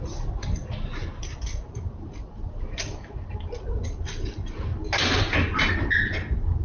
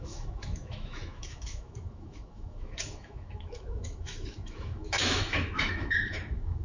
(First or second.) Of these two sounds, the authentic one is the first